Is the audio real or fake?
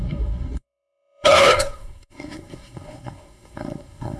fake